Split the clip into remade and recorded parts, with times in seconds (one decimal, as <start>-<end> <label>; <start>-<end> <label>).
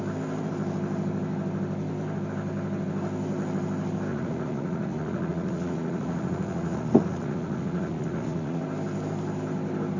0.0-4.1 recorded; 4.1-8.6 remade; 8.6-10.0 recorded